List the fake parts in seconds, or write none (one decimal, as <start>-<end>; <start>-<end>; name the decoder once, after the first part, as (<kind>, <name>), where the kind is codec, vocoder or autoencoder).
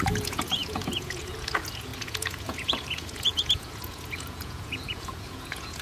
0.0-5.8 (vocoder, Vocos)